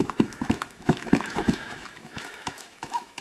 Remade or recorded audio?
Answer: remade